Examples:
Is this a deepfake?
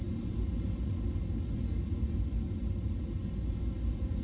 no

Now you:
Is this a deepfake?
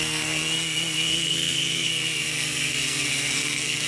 yes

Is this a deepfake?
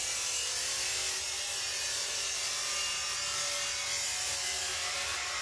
no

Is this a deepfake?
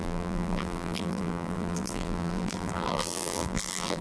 yes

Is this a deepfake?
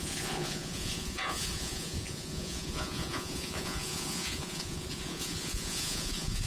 yes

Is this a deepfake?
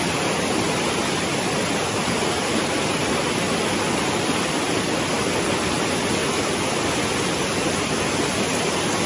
no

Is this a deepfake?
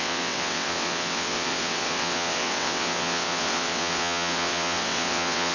yes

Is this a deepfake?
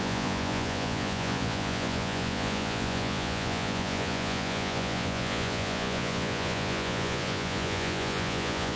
yes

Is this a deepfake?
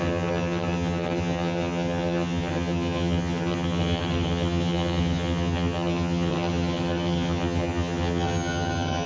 yes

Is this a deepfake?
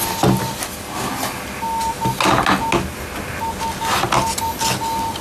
no